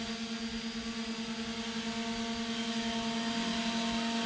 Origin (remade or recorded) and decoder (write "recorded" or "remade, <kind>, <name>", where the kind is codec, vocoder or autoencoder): recorded